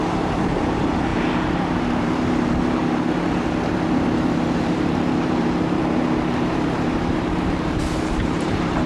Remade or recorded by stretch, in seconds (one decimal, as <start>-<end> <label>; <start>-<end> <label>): 0.0-2.8 remade; 2.8-3.7 recorded; 3.7-5.8 remade; 5.8-6.5 recorded; 6.5-8.9 remade